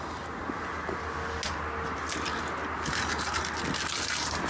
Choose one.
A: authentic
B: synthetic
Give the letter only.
A